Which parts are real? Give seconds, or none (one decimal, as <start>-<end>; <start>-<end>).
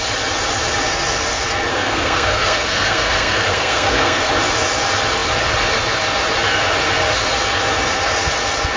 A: 0.0-1.7; 4.3-8.8